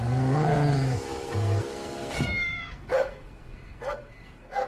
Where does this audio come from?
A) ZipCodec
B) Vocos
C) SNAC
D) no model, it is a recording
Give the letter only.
C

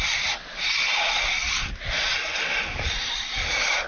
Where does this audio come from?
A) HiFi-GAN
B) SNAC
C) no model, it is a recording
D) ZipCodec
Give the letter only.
C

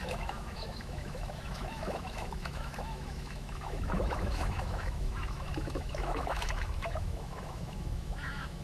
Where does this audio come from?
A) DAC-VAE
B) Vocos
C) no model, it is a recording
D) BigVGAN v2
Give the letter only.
A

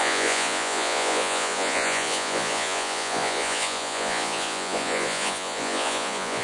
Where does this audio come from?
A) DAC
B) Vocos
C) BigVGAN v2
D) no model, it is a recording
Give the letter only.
B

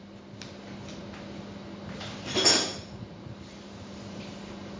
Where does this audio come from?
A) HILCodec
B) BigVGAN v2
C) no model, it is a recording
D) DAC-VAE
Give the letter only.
C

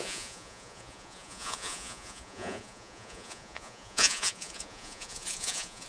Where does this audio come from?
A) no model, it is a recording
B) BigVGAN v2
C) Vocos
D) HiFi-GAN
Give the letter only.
C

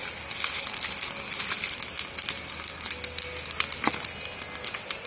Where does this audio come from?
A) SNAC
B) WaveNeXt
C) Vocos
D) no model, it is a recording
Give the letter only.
D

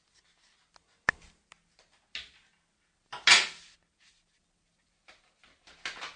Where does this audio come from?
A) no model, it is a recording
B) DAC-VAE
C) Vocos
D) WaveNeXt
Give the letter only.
A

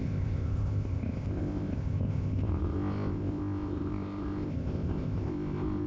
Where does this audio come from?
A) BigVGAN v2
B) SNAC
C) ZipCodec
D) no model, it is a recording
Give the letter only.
C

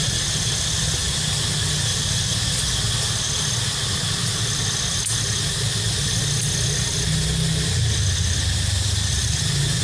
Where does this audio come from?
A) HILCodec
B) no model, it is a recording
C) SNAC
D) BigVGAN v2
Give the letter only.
B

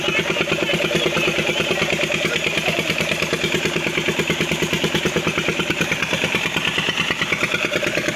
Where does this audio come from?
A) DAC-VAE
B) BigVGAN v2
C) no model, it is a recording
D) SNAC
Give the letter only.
B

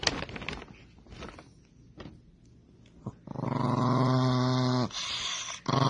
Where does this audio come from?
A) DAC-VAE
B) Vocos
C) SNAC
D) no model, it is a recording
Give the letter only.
D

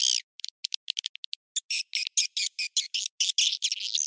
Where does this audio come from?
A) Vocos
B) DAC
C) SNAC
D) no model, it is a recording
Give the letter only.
D